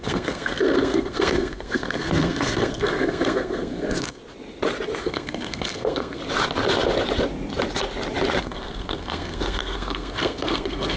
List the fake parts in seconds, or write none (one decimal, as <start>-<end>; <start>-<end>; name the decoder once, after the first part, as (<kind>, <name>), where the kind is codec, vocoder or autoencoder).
0.0-4.2 (codec, SNAC); 5.0-6.2; 8.4-11.0